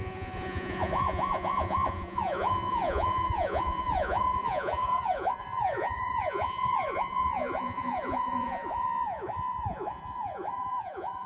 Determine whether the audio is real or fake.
fake